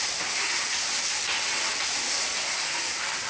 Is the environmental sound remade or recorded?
recorded